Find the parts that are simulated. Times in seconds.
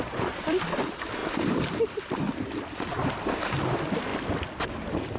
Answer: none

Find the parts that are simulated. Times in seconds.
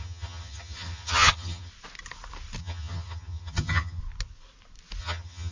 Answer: 0.0-1.7 (vocoder, HiFi-GAN); 2.6-4.0; 5.0-5.5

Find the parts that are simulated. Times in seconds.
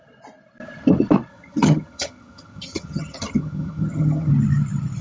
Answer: 1.3-4.3 (vocoder, HiFi-GAN)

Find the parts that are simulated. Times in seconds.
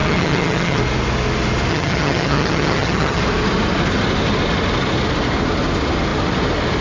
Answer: 0.0-0.8 (vocoder, HiFi-GAN); 1.7-3.2